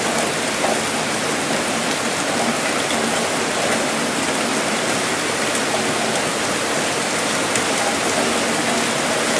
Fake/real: real